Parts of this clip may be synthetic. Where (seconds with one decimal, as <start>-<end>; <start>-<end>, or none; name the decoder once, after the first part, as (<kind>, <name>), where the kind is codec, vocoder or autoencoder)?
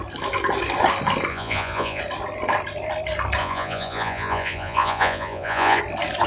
1.3-2.0 (vocoder, Vocos); 3.4-5.8